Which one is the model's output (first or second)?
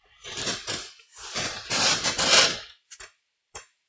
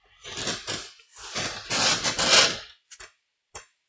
first